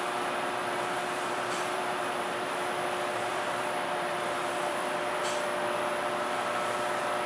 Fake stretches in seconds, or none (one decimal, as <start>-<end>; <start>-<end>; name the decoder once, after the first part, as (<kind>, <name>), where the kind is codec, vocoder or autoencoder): 0.6-2.5 (vocoder, BigVGAN v2); 3.3-5.2

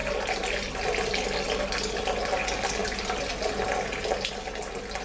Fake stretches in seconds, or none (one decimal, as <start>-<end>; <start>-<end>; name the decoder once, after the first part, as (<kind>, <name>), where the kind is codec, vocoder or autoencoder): none

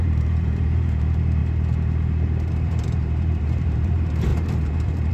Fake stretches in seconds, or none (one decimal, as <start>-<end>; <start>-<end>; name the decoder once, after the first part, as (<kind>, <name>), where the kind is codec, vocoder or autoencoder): 0.0-1.4 (vocoder, BigVGAN v2); 2.5-5.1

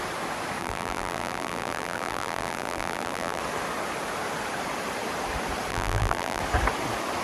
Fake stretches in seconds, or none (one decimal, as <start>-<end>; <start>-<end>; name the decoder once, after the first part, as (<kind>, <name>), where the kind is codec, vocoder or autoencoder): 0.6-3.4 (vocoder, BigVGAN v2); 5.7-6.4

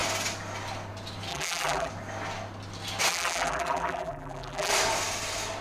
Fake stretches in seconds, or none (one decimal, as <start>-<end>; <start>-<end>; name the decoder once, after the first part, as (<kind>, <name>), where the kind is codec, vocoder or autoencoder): 1.3-1.9 (vocoder, BigVGAN v2); 3.1-4.7

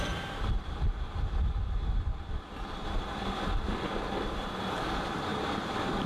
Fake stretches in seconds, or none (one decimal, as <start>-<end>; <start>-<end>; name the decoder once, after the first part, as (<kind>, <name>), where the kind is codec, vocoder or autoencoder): 0.0-6.1 (vocoder, BigVGAN v2)

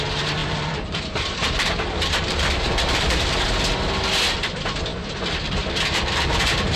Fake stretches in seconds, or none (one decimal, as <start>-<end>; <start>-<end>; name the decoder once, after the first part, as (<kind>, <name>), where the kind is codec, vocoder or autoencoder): 0.4-3.6 (vocoder, BigVGAN v2); 4.9-6.8

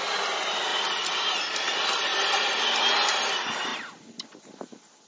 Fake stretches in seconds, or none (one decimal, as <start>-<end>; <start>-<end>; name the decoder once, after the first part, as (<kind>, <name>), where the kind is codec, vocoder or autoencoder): 0.7-3.3 (vocoder, BigVGAN v2)